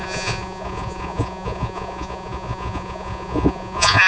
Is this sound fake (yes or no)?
yes